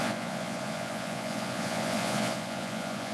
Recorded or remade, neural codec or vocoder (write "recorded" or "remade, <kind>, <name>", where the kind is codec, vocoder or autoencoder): remade, vocoder, Vocos